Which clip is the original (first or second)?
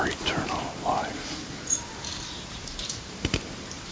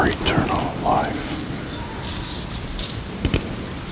second